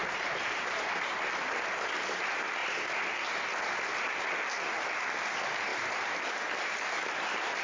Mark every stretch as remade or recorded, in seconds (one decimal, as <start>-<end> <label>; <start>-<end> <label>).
0.0-1.2 remade; 1.2-7.6 recorded